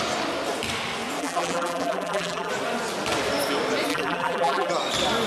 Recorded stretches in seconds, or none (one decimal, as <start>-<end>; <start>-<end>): 0.0-1.2; 2.5-3.9; 4.7-5.3